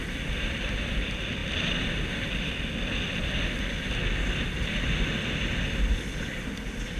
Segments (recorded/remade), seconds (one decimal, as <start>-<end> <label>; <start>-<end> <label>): 0.0-7.0 recorded